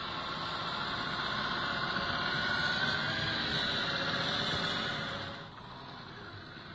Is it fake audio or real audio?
real